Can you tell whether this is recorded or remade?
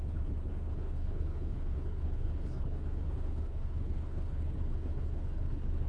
remade